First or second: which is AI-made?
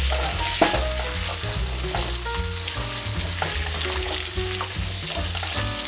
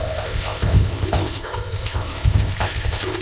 second